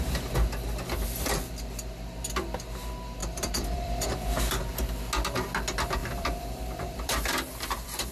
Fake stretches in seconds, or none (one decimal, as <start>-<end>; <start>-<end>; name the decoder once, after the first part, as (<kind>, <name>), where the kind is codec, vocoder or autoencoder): 3.2-4.1 (vocoder, BigVGAN v2); 6.0-8.1